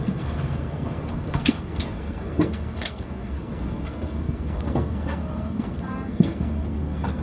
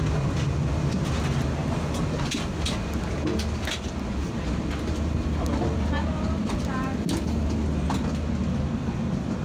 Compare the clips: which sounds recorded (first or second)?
second